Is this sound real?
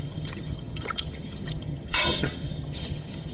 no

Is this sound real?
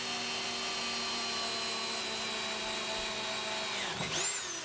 yes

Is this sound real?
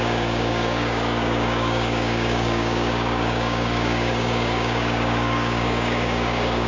no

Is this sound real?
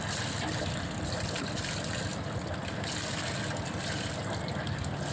yes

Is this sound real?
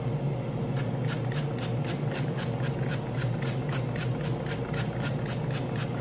yes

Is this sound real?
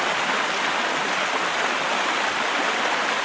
yes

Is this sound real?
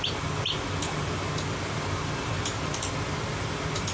yes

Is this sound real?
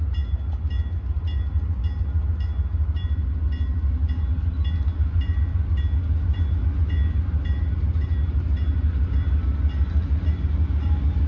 yes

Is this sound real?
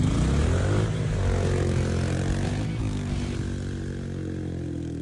yes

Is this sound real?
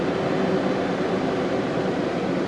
yes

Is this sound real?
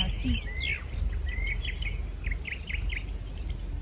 yes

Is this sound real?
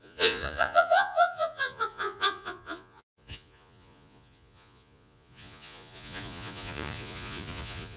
no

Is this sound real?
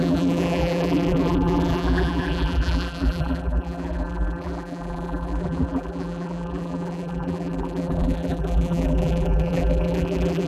no